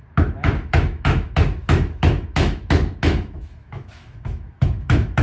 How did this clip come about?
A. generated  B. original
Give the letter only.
A